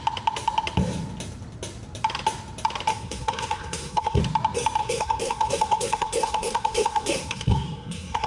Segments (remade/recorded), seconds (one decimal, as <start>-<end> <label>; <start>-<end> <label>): 0.0-2.9 recorded; 2.9-4.2 remade; 4.2-4.8 recorded; 4.8-8.3 remade